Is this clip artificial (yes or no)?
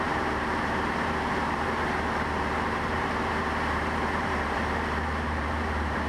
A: yes